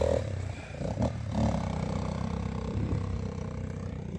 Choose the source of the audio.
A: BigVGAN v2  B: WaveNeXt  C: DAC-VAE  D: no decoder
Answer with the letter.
A